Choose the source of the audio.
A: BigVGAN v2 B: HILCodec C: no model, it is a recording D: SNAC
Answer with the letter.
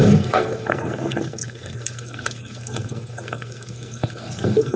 D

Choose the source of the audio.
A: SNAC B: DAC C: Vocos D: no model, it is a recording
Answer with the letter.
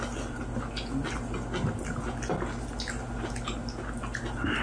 D